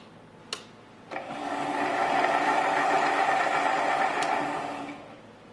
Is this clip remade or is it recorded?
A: recorded